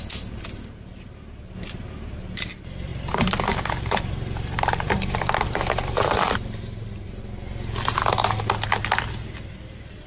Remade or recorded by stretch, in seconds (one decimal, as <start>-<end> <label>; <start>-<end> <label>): 0.0-2.9 recorded; 2.9-7.2 remade; 7.2-10.1 recorded